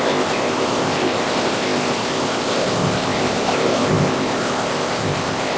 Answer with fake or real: fake